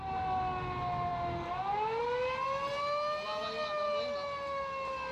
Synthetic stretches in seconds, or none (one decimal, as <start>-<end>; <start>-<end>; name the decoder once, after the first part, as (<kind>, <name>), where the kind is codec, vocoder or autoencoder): none

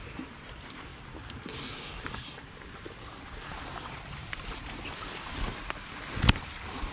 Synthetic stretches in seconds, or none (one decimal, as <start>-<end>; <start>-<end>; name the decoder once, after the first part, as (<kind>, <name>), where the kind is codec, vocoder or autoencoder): 4.2-5.3 (vocoder, BigVGAN v2)

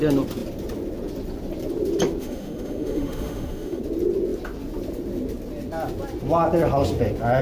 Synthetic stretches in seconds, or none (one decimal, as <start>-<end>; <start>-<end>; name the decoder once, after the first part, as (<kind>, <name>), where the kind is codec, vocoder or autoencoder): 2.2-3.8 (autoencoder, DAC-VAE)